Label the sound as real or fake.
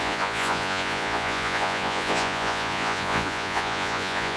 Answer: fake